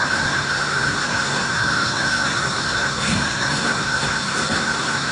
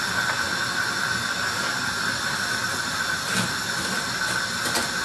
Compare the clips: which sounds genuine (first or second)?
second